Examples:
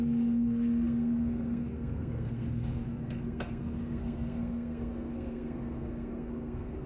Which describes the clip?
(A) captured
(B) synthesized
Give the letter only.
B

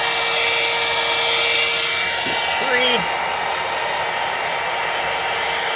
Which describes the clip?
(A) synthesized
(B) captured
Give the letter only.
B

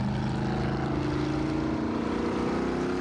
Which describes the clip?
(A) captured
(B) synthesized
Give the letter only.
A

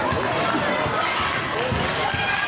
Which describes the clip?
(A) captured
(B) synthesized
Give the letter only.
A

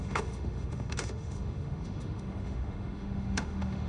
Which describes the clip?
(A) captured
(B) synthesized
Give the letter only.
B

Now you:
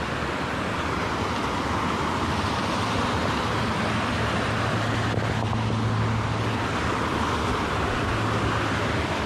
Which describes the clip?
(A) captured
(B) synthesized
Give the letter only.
A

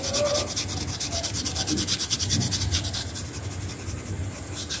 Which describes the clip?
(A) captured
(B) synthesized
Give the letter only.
A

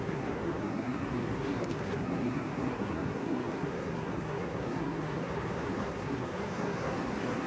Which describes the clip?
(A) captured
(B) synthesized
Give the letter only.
B